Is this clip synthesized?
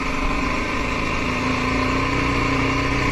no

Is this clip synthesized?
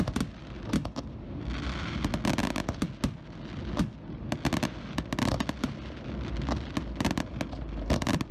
no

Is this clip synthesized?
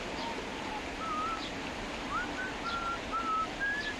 no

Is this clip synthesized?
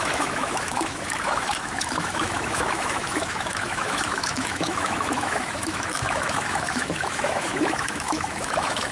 yes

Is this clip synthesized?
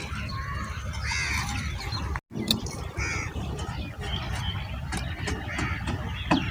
no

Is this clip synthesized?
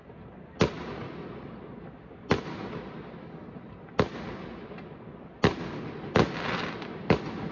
no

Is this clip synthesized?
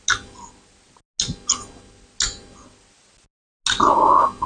no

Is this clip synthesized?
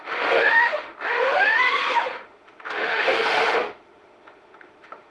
yes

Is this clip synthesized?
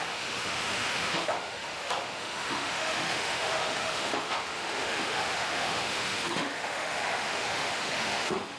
yes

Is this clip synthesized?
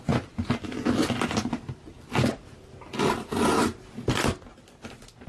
no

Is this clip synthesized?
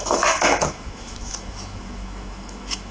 yes